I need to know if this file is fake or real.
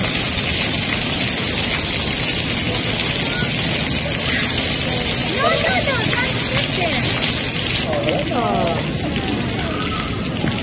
real